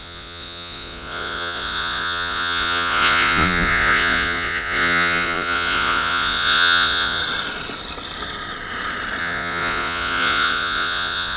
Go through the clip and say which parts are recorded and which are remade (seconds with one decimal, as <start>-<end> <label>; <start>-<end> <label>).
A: 0.0-7.2 remade; 7.2-9.2 recorded; 9.2-11.4 remade